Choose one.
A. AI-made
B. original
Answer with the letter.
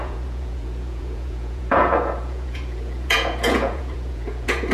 A